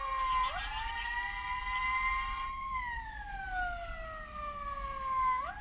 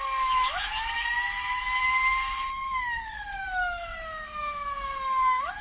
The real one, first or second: first